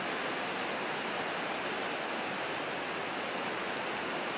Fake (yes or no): no